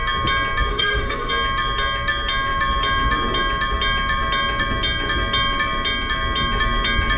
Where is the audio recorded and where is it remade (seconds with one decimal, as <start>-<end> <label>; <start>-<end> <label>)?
0.0-0.7 recorded; 0.7-1.3 remade; 1.3-7.2 recorded